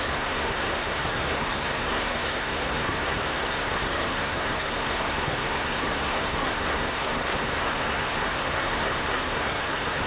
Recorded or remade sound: remade